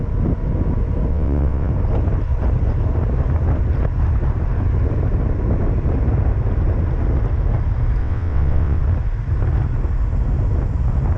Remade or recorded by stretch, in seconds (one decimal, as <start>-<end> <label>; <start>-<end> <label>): 0.0-1.1 recorded; 1.1-1.7 remade; 1.7-8.0 recorded; 8.0-8.8 remade; 8.8-11.2 recorded